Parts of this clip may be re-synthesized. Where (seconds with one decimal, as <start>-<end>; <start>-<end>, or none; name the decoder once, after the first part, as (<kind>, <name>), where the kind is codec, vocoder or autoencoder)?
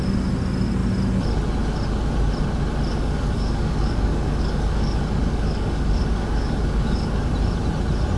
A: 2.9-7.3 (codec, DAC)